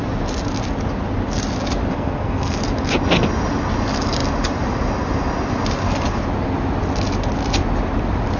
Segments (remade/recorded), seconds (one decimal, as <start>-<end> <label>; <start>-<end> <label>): 0.0-1.9 recorded; 1.9-2.6 remade; 2.6-8.4 recorded